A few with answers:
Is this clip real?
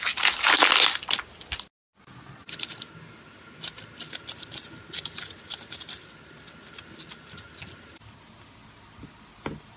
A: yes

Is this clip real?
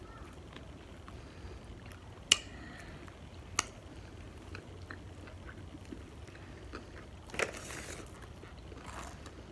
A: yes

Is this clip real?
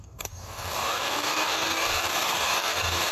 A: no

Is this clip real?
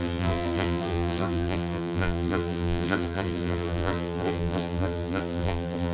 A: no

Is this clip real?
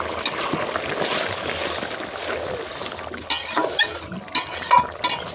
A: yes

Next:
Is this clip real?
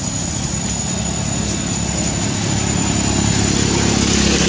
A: yes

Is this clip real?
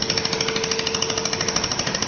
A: yes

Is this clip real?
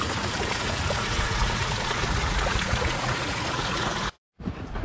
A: no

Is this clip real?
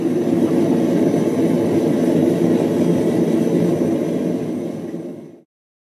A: yes